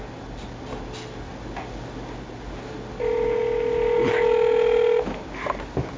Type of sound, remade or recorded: recorded